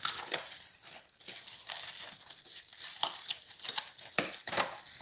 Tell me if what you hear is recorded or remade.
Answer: recorded